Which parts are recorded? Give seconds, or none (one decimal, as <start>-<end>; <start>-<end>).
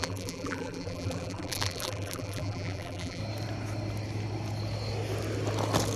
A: 3.2-6.0